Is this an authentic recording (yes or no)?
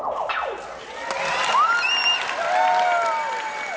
yes